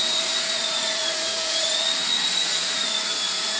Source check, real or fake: fake